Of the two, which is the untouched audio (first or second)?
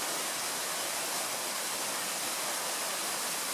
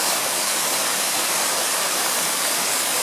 first